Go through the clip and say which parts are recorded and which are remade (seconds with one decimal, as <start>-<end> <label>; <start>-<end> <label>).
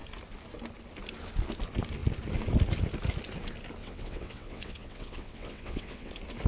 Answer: 0.0-3.8 recorded; 3.8-6.1 remade; 6.1-6.5 recorded